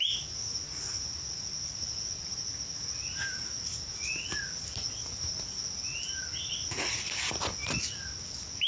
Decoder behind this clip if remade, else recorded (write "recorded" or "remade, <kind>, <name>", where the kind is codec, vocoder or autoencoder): recorded